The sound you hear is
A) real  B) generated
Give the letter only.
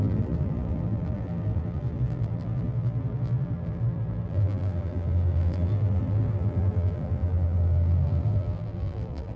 B